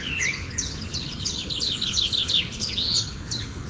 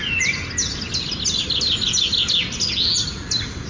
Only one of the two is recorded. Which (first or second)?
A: second